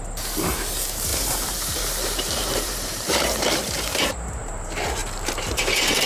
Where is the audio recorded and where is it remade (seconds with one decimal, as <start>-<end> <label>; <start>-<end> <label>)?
0.0-1.1 recorded; 1.1-4.5 remade; 4.5-5.0 recorded; 5.0-6.1 remade